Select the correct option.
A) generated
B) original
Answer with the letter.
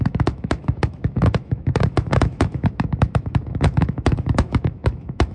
A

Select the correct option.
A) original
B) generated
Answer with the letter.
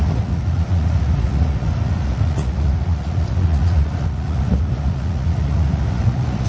B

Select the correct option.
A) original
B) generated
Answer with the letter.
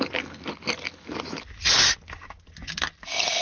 A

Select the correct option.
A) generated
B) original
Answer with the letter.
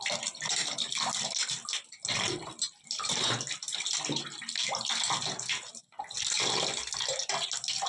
B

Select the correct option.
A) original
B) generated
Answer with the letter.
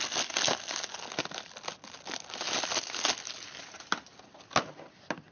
A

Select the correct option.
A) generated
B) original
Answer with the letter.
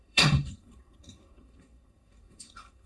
A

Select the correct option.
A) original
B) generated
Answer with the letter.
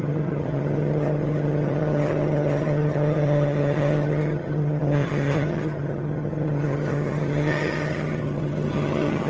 B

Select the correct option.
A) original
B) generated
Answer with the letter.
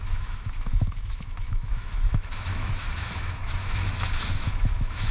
B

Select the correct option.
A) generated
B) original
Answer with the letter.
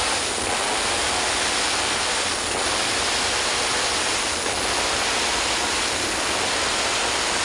B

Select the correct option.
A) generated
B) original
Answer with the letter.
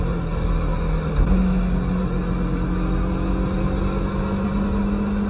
B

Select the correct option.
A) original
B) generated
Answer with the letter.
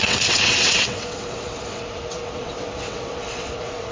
B